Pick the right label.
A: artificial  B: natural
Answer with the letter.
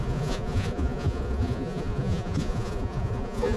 A